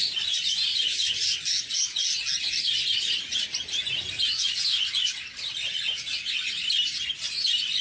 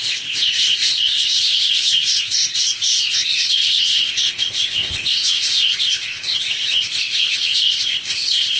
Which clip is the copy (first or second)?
second